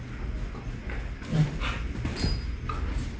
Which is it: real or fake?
real